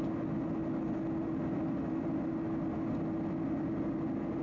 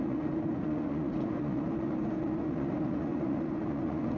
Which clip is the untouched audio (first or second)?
first